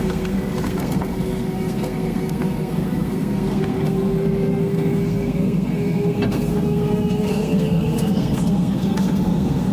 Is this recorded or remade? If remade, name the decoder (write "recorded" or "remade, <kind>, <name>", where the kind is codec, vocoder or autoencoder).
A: remade, codec, SNAC